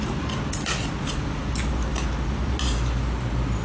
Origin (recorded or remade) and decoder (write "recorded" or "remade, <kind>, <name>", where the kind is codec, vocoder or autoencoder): recorded